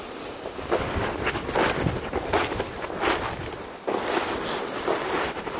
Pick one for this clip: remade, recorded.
recorded